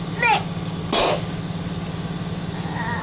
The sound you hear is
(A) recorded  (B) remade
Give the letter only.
A